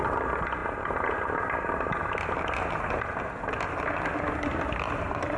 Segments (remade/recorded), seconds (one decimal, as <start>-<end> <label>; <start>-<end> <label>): 0.0-5.4 recorded